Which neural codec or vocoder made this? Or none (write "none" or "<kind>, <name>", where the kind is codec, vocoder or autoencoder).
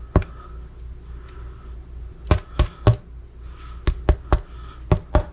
none